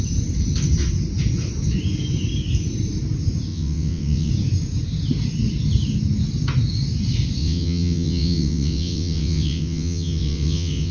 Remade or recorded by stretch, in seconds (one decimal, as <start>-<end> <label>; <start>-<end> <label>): 0.0-3.5 recorded; 3.5-4.3 remade; 4.3-7.4 recorded; 7.4-10.9 remade